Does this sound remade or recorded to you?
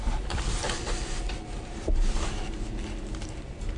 remade